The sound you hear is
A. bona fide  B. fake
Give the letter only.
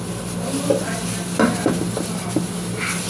A